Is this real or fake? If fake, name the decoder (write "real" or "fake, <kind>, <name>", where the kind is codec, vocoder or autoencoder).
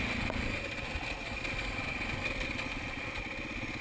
real